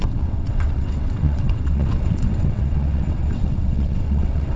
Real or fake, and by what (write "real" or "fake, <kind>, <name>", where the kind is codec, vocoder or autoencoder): fake, vocoder, WaveNeXt